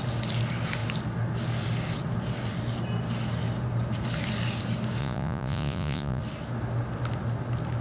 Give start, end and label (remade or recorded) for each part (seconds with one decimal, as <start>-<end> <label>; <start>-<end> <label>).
0.0-5.0 recorded; 5.0-6.2 remade; 6.2-7.8 recorded